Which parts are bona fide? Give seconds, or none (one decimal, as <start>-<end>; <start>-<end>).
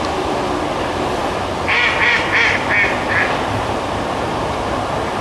0.0-5.2